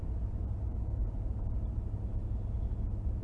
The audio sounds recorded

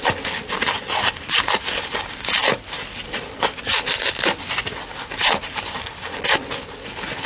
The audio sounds recorded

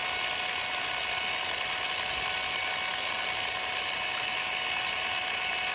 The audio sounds recorded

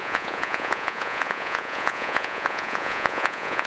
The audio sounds remade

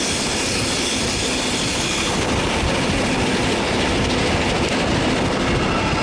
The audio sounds recorded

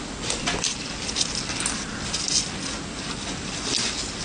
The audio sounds recorded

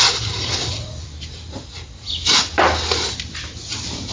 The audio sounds recorded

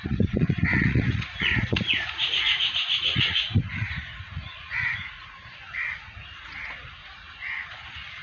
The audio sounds remade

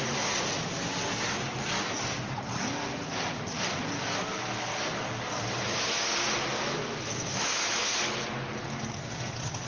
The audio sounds recorded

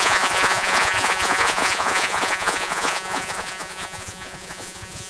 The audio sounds remade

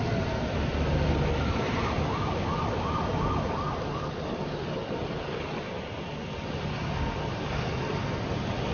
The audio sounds recorded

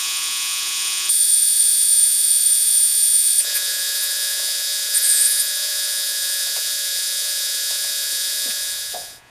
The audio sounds remade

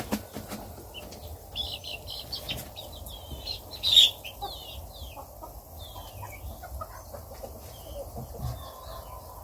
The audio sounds recorded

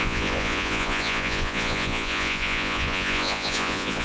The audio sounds remade